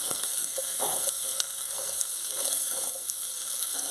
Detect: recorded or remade remade